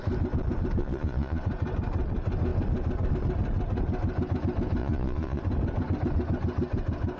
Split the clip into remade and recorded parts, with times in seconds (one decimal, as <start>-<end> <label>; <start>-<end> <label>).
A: 0.0-0.8 recorded; 0.8-1.4 remade; 1.4-4.8 recorded; 4.8-5.4 remade; 5.4-7.2 recorded